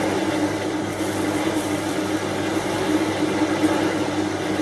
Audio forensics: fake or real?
real